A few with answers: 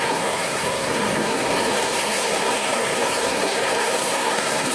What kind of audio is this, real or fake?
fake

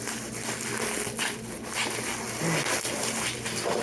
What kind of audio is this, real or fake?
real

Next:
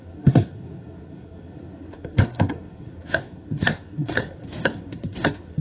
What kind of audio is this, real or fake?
fake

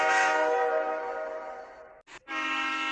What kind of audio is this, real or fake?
real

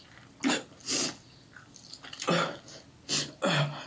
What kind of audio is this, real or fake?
real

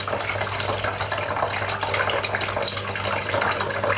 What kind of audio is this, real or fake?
real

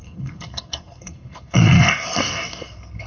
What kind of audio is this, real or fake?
fake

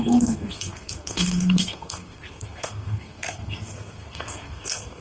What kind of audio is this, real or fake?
fake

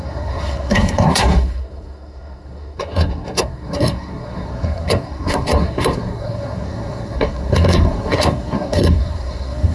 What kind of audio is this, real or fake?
fake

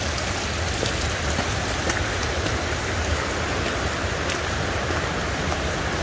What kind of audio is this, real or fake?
real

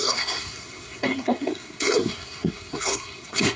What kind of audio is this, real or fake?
fake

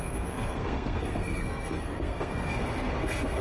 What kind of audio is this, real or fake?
fake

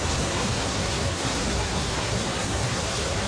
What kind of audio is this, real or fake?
fake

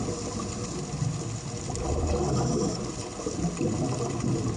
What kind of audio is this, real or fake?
real